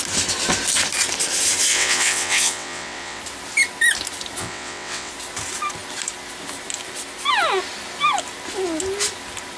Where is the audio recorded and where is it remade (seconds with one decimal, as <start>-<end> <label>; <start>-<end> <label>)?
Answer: 0.0-1.7 recorded; 1.7-3.2 remade; 3.2-4.4 recorded; 4.4-5.1 remade; 5.1-9.6 recorded